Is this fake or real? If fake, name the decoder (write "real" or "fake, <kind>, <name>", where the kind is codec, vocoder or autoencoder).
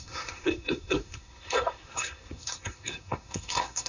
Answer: fake, codec, SNAC